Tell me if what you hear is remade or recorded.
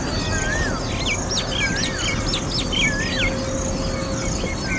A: recorded